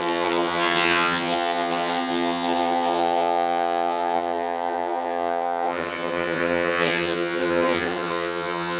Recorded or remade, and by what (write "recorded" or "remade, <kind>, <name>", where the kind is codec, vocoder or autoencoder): remade, vocoder, HiFi-GAN